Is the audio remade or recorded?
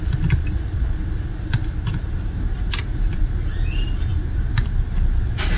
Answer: recorded